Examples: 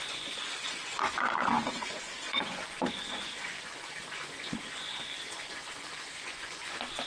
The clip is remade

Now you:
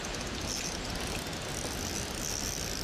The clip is recorded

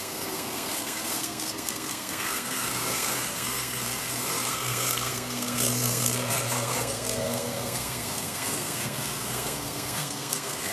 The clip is remade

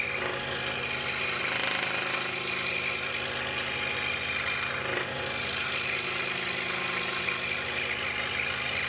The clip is recorded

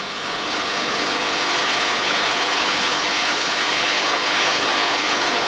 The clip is remade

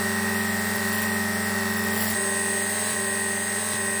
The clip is recorded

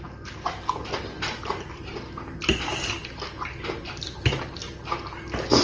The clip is recorded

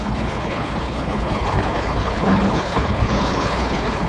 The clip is remade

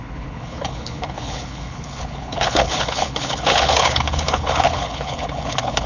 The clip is remade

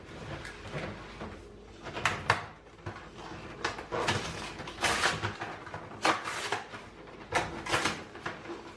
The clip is recorded